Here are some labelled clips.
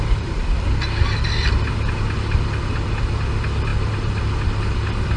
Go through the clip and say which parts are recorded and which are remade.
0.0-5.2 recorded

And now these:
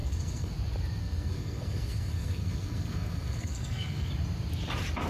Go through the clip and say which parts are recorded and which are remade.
0.0-0.5 remade; 0.5-1.0 recorded; 1.0-4.1 remade; 4.1-5.1 recorded

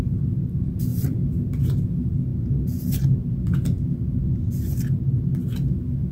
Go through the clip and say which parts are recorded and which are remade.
0.0-0.9 recorded; 0.9-1.6 remade; 1.6-6.1 recorded

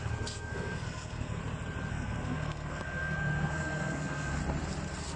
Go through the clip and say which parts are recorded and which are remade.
0.0-1.4 remade; 1.4-1.9 recorded; 1.9-4.4 remade; 4.4-5.2 recorded

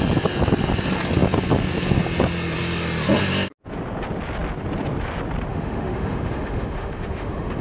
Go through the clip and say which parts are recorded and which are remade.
0.0-5.5 recorded; 5.5-7.6 remade